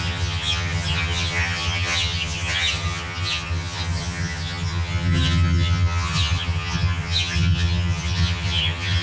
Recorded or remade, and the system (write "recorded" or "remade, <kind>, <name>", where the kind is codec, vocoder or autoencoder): remade, vocoder, HiFi-GAN